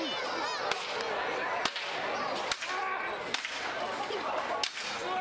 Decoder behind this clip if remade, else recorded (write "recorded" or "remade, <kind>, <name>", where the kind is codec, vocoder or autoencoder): recorded